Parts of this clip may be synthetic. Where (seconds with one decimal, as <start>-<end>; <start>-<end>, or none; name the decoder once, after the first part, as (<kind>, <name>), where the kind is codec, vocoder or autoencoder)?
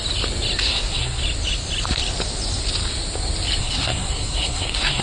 0.6-1.2 (codec, SNAC); 3.6-5.0